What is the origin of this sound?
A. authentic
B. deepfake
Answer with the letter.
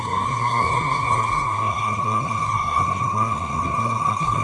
B